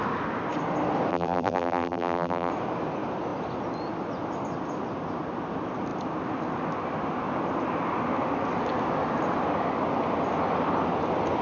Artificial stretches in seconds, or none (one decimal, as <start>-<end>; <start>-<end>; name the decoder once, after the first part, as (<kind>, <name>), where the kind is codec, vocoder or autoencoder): 1.1-2.5 (vocoder, BigVGAN v2)